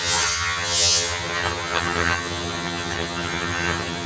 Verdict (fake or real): fake